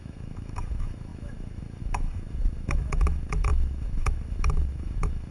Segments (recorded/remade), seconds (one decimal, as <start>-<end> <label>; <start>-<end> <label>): 0.0-5.3 remade